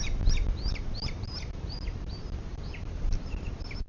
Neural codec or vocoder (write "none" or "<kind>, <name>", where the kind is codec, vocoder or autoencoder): none